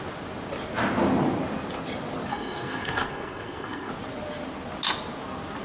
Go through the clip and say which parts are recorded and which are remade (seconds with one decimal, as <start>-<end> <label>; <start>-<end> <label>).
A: 0.0-2.3 recorded; 2.3-3.9 remade; 3.9-5.6 recorded